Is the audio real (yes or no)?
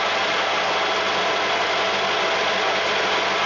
yes